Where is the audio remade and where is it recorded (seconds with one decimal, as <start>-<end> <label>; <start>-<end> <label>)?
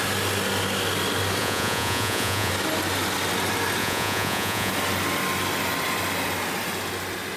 0.0-1.4 recorded; 1.4-2.5 remade; 2.5-3.8 recorded; 3.8-4.7 remade; 4.7-7.4 recorded